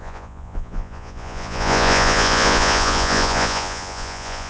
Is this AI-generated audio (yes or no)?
yes